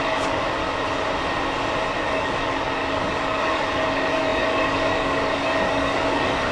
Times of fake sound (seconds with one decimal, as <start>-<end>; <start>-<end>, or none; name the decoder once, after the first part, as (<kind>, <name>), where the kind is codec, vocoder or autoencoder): 0.0-0.6 (codec, DAC); 2.0-6.5